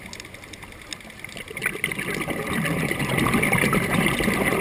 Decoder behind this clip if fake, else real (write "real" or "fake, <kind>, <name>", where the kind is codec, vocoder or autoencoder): real